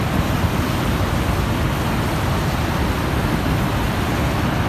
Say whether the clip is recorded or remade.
recorded